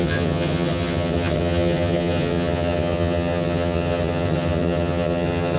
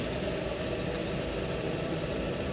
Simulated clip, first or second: first